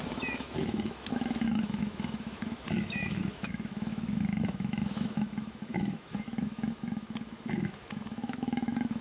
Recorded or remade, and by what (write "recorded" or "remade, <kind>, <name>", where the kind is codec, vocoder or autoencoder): remade, autoencoder, DAC-VAE